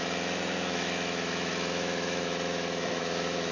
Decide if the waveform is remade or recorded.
remade